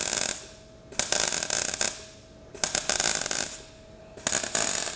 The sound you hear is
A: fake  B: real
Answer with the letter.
B